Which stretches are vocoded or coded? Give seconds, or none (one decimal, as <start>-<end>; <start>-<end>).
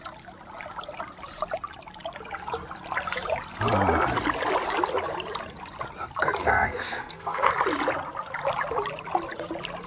6.4-7.5